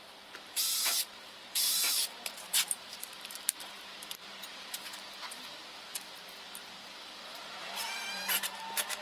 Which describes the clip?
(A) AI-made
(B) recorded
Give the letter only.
A